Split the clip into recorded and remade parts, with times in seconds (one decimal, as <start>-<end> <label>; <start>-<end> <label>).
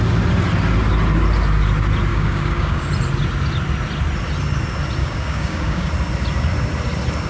0.0-2.1 recorded; 2.1-2.9 remade; 2.9-5.0 recorded; 5.0-5.9 remade; 5.9-7.3 recorded